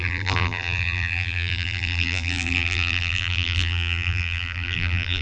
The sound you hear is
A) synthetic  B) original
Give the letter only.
A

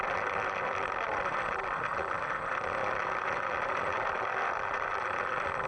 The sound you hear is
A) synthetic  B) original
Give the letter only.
A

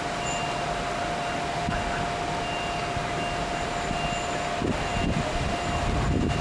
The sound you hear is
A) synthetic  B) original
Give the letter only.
B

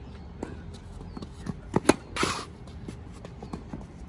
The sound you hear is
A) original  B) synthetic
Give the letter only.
A